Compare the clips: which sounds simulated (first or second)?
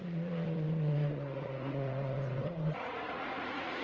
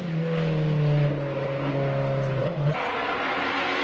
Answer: first